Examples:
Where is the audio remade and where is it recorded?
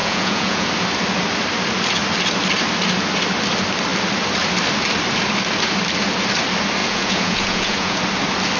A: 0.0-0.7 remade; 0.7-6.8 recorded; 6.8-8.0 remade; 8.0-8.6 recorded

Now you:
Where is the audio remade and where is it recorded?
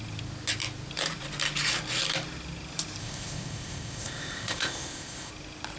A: 0.0-3.0 recorded; 3.0-5.3 remade; 5.3-5.8 recorded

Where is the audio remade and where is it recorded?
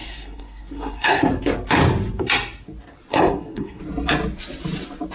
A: 0.0-1.3 remade; 1.3-3.1 recorded; 3.1-3.8 remade; 3.8-5.1 recorded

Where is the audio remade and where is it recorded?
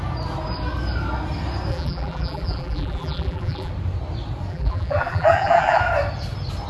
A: 0.0-1.7 recorded; 1.7-3.7 remade; 3.7-4.5 recorded; 4.5-5.8 remade; 5.8-6.7 recorded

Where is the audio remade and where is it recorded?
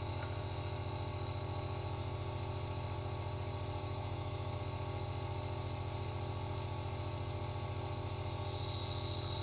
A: 0.0-3.8 recorded; 3.8-4.6 remade; 4.6-9.4 recorded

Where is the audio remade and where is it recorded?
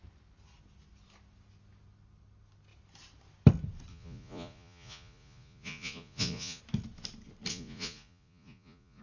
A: 0.0-3.9 recorded; 3.9-6.6 remade; 6.6-7.5 recorded; 7.5-9.0 remade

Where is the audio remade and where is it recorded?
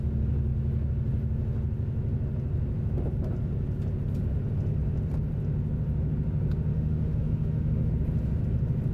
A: 0.0-6.7 recorded; 6.7-7.9 remade; 7.9-8.9 recorded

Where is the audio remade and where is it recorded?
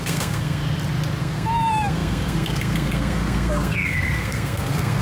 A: 0.0-0.6 remade; 0.6-1.2 recorded; 1.2-5.0 remade